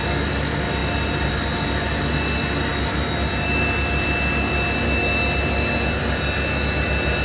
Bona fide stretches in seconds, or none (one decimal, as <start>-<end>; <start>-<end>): 0.0-7.2